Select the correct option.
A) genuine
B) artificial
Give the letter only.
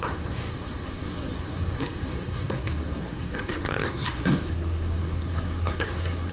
B